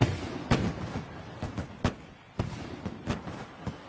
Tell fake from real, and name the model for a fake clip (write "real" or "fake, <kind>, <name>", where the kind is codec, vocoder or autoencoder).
real